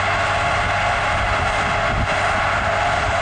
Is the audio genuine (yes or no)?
yes